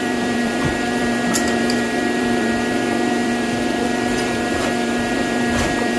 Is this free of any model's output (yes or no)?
no